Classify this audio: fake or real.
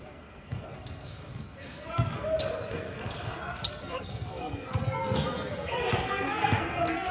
fake